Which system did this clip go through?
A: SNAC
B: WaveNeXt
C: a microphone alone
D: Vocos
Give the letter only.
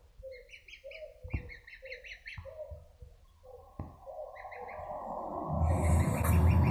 C